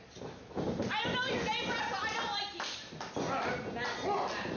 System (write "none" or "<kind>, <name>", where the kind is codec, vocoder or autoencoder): none